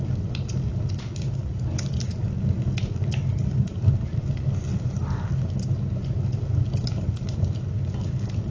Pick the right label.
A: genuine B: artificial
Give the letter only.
A